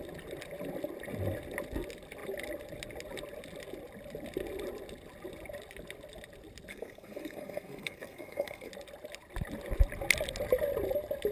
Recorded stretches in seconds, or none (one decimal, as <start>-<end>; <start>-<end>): 0.0-6.7; 8.7-11.3